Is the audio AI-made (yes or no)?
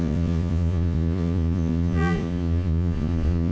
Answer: yes